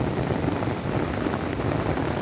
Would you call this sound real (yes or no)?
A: yes